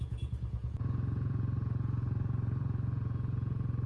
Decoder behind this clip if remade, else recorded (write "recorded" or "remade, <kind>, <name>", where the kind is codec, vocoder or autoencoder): remade, vocoder, Vocos